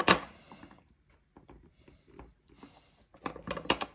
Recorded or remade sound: recorded